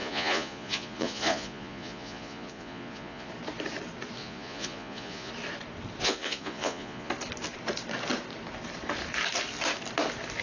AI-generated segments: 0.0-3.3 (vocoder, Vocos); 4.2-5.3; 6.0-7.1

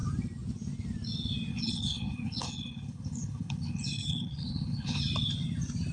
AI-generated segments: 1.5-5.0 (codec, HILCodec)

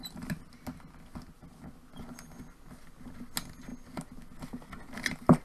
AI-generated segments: none

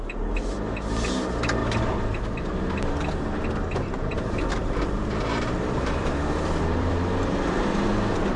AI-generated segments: 1.6-2.2 (vocoder, BigVGAN v2); 4.6-7.6